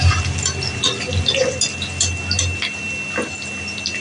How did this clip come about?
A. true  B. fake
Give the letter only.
A